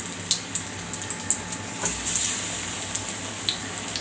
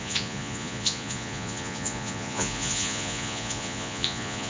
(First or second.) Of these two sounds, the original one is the first